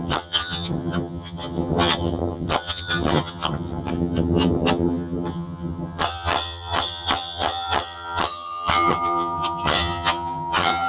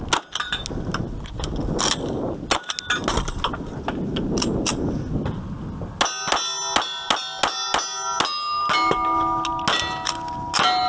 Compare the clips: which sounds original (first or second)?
second